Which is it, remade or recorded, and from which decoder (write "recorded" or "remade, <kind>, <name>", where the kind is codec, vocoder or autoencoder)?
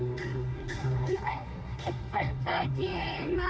remade, codec, SNAC